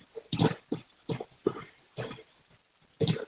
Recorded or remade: recorded